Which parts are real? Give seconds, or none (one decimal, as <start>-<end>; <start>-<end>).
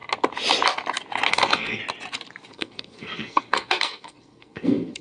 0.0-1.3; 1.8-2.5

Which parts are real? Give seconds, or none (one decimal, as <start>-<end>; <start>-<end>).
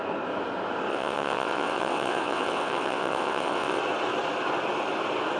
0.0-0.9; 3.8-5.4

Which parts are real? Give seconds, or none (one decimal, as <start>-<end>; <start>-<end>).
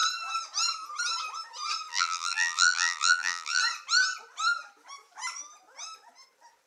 0.0-1.9; 3.6-6.7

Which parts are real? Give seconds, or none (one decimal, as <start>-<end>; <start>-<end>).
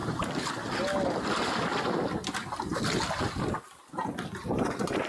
0.5-4.4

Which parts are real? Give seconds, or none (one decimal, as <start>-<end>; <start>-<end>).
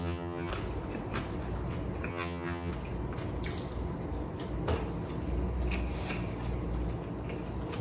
0.5-2.1; 2.7-7.8